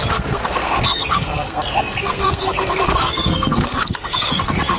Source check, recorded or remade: remade